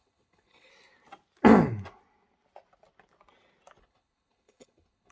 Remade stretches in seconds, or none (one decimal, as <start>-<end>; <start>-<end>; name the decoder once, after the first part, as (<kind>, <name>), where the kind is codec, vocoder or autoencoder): 0.0-0.7 (codec, HILCodec); 3.8-5.1